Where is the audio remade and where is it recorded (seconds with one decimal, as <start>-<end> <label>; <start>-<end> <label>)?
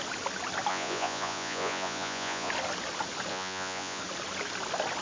0.0-0.7 recorded; 0.7-2.5 remade; 2.5-3.3 recorded; 3.3-4.0 remade; 4.0-5.0 recorded